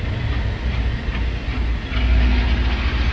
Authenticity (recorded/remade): recorded